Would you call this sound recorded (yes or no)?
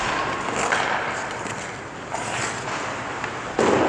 yes